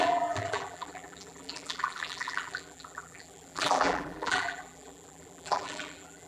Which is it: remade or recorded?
remade